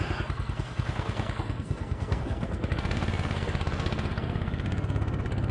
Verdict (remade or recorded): remade